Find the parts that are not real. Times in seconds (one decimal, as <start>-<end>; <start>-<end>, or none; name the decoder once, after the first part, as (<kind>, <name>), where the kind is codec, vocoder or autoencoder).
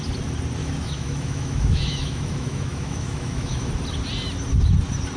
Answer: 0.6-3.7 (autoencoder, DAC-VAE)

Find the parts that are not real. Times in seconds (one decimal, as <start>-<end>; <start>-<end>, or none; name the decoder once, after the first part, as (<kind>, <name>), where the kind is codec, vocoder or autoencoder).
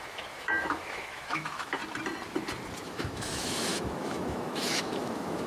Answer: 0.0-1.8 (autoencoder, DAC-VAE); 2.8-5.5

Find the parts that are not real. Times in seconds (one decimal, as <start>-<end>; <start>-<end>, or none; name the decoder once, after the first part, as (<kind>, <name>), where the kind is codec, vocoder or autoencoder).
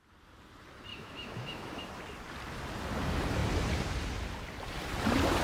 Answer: 0.9-1.9 (autoencoder, DAC-VAE)